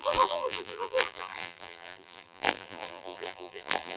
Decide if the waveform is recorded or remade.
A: remade